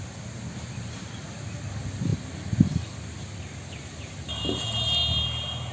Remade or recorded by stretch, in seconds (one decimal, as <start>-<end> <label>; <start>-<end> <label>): 0.0-5.7 recorded